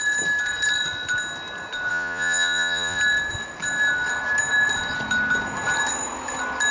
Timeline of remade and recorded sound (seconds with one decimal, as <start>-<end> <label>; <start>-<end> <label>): 0.0-1.9 recorded; 1.9-3.0 remade; 3.0-6.7 recorded